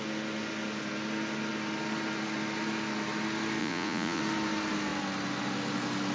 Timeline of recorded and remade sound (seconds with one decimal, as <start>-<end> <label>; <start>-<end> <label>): 0.0-3.6 recorded; 3.6-4.2 remade; 4.2-6.1 recorded